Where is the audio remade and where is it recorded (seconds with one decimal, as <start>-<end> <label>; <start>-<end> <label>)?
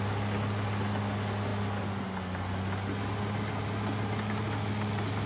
0.0-5.3 recorded